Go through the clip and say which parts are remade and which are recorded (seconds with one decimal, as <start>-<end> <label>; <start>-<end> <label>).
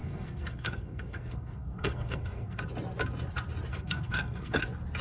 0.0-2.6 remade; 2.6-3.7 recorded; 3.7-4.6 remade; 4.6-5.0 recorded